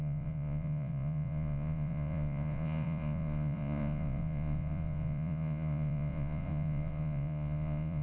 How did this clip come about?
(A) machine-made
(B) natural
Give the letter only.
A